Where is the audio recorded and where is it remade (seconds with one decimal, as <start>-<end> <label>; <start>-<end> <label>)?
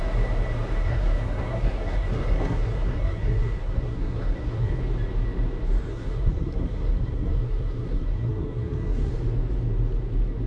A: 0.0-0.8 recorded; 0.8-4.8 remade; 4.8-5.9 recorded; 5.9-9.1 remade; 9.1-10.5 recorded